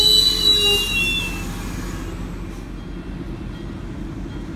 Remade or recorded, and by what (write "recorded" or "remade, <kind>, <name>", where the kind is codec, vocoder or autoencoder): recorded